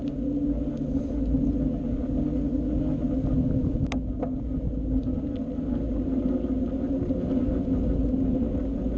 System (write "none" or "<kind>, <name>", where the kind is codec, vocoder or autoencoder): none